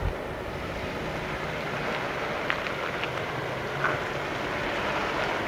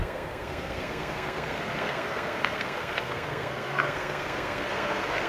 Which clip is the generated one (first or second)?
second